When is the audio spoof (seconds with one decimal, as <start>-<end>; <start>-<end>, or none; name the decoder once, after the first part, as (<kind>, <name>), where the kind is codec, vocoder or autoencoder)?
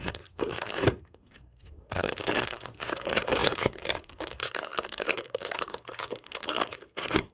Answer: 0.0-7.3 (codec, SNAC)